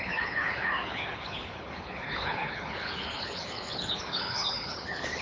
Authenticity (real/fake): fake